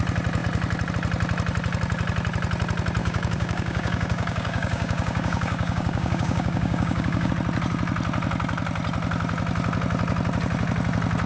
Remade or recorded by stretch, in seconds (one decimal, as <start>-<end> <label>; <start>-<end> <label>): 0.0-3.0 recorded; 3.0-7.3 remade; 7.3-11.3 recorded